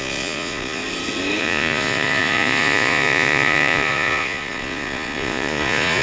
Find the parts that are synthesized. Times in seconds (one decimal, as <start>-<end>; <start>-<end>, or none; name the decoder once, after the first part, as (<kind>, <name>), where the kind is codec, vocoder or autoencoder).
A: 0.0-0.8 (vocoder, Vocos); 1.4-6.0